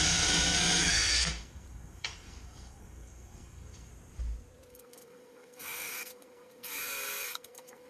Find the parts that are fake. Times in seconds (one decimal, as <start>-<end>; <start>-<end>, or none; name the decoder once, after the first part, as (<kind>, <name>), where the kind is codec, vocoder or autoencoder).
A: 0.0-3.9 (codec, SNAC); 4.7-7.9